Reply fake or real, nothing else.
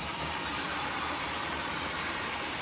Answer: fake